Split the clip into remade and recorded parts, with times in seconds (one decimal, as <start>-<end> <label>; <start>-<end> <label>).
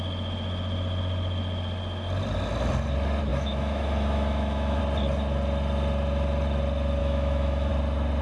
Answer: 0.0-3.3 recorded; 3.3-4.8 remade; 4.8-7.0 recorded; 7.0-7.7 remade; 7.7-8.2 recorded